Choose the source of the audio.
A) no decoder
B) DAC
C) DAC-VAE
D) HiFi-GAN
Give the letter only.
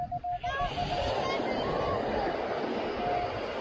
A